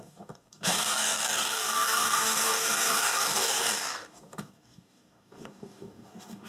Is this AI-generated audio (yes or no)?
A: yes